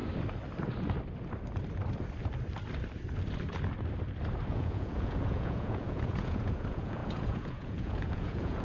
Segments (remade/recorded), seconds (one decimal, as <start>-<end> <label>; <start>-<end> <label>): 0.0-4.5 recorded; 4.5-8.6 remade